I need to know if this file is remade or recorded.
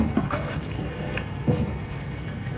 remade